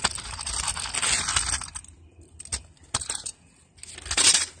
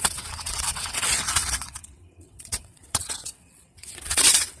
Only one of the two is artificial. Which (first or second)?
second